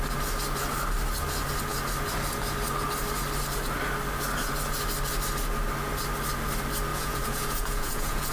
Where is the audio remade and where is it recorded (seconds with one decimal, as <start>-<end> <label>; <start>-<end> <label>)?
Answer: 0.0-6.9 recorded; 6.9-8.3 remade